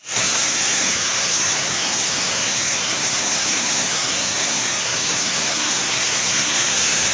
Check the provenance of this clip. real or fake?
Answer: fake